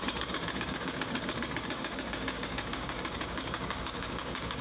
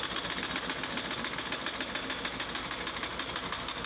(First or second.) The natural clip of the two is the second